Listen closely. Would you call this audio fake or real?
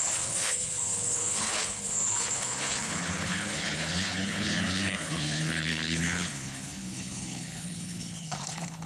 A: fake